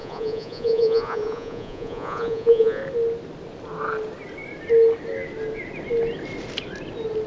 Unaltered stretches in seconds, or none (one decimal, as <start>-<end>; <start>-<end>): 2.8-7.3